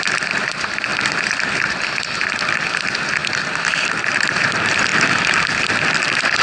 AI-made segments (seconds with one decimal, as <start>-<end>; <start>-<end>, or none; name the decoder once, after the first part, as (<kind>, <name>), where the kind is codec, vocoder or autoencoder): 0.0-4.9 (vocoder, BigVGAN v2); 5.7-6.4